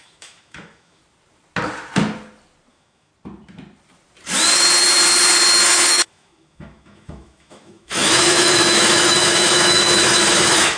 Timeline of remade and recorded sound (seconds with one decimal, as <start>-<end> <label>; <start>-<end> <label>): 0.0-1.0 remade; 1.0-2.7 recorded; 2.7-3.1 remade; 3.1-5.9 recorded; 5.9-10.8 remade